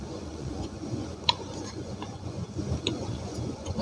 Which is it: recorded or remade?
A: remade